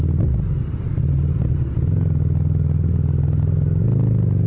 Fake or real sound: real